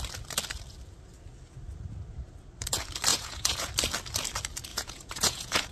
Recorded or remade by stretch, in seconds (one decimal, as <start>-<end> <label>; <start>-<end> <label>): 0.0-3.1 recorded; 3.1-3.7 remade; 3.7-4.7 recorded; 4.7-5.7 remade